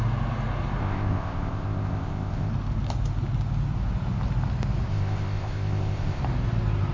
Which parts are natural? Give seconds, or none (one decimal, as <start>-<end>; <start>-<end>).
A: 0.0-0.8; 2.5-4.9; 6.2-6.9